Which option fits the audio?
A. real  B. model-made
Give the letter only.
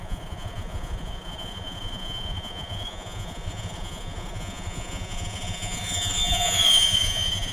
B